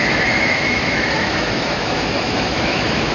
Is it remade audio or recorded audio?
remade